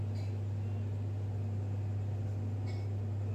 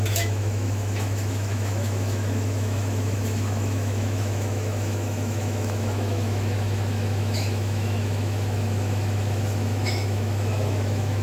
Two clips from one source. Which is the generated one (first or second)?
second